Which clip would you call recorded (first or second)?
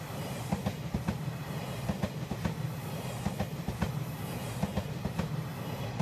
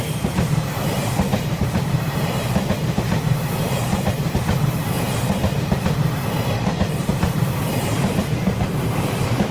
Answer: first